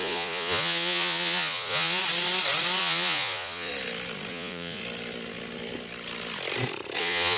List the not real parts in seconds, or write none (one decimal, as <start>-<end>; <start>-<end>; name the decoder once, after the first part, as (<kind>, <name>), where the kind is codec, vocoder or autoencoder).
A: 0.0-2.0 (vocoder, Vocos); 2.8-3.7; 4.3-4.8; 7.0-7.4